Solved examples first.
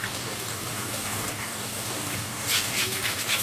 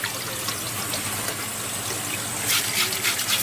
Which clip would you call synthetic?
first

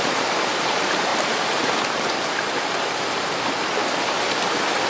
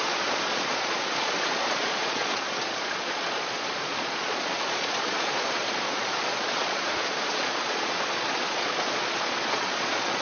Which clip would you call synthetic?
second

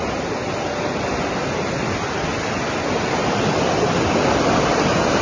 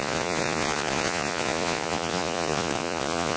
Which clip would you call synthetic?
second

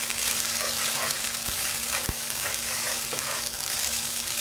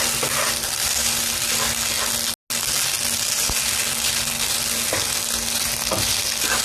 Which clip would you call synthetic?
first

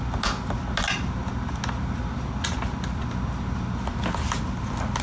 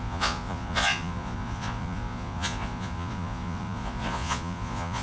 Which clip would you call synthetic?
second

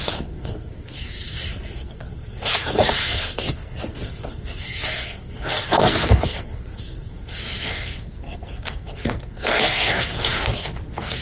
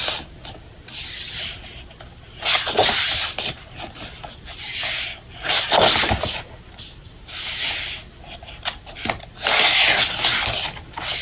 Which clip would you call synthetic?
first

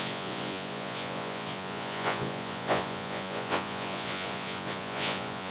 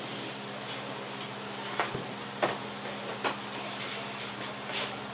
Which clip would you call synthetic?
first